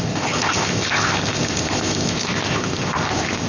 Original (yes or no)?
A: no